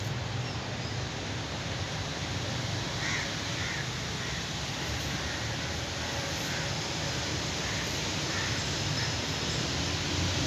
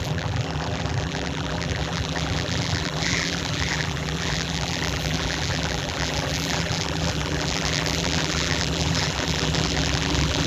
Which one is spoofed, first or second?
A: second